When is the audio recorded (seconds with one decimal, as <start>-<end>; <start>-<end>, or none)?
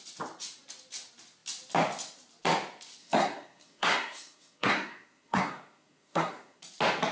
0.0-3.0; 6.6-7.1